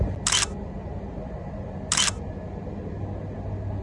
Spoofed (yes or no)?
no